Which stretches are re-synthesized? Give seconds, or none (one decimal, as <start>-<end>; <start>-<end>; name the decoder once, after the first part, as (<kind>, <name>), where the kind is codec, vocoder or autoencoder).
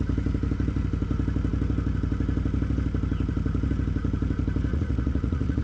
4.7-5.6 (vocoder, Vocos)